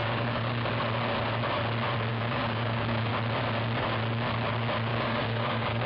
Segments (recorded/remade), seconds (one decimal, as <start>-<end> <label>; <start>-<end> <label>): 0.0-0.7 remade; 0.7-2.1 recorded; 2.1-3.1 remade; 3.1-4.9 recorded; 4.9-5.9 remade